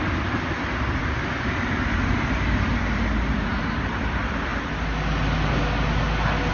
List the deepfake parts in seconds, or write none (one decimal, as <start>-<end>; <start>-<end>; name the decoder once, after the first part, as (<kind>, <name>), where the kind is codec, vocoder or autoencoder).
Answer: none